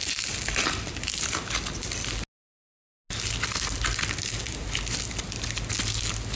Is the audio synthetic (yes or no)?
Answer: no